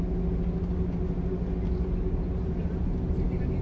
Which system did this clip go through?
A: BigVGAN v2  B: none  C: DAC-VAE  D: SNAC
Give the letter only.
B